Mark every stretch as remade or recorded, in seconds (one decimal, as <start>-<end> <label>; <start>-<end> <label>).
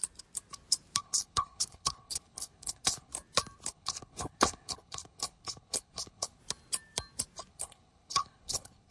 0.0-1.0 recorded; 1.0-3.1 remade; 3.1-3.7 recorded; 3.7-6.4 remade; 6.4-7.5 recorded; 7.5-8.9 remade